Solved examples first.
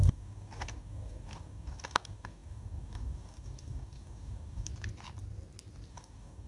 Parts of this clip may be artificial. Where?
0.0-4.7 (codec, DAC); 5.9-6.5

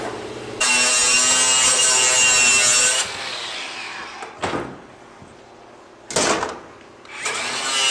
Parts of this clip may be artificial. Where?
none

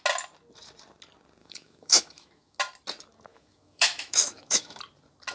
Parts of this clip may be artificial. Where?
1.4-2.6 (autoencoder, DAC-VAE); 3.3-4.8